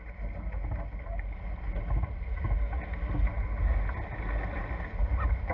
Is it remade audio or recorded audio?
recorded